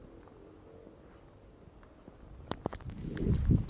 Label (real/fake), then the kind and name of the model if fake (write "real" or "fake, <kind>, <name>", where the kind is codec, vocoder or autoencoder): real